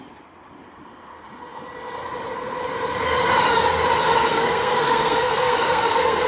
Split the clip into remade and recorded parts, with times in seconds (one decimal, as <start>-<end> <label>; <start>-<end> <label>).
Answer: 0.0-4.3 recorded; 4.3-6.3 remade